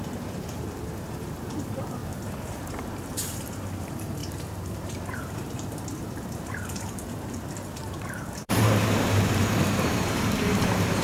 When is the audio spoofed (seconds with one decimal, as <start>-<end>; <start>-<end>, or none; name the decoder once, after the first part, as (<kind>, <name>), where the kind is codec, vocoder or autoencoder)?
0.0-2.0 (vocoder, BigVGAN v2); 2.6-11.0